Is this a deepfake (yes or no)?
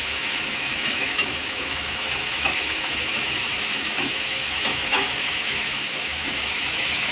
yes